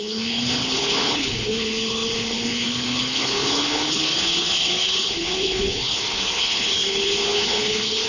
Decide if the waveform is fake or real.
fake